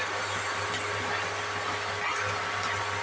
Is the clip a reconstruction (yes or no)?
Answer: no